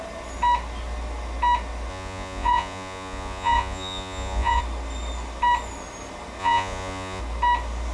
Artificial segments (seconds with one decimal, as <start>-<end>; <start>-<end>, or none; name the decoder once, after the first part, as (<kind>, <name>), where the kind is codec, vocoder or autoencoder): 1.9-4.6 (vocoder, Vocos); 6.4-7.2